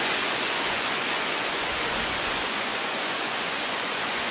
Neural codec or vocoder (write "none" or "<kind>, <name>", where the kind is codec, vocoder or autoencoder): vocoder, Vocos